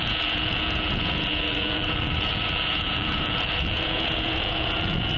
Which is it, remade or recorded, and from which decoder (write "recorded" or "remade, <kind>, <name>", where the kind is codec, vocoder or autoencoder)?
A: remade, vocoder, Vocos